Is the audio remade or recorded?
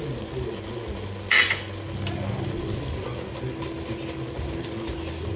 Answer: recorded